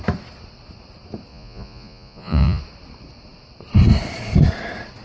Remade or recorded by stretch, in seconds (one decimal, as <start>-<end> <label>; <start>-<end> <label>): 0.0-1.3 recorded; 1.3-2.6 remade; 2.6-5.0 recorded